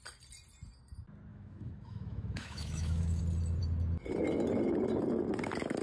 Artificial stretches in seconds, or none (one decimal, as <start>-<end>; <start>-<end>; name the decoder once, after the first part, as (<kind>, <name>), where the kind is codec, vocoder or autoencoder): 1.3-3.2 (autoencoder, DAC-VAE)